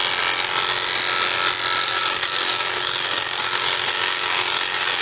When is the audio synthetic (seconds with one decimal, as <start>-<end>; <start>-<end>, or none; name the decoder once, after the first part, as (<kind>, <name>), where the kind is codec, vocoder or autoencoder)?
1.8-5.0 (codec, DAC)